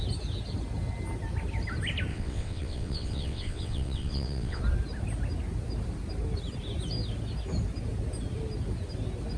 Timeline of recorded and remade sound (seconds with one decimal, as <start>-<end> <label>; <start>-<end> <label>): 0.0-2.1 recorded; 2.1-4.6 remade; 4.6-9.4 recorded